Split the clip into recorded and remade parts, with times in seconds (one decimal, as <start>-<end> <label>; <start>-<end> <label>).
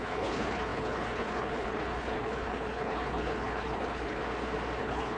0.0-4.2 remade; 4.2-4.8 recorded; 4.8-5.2 remade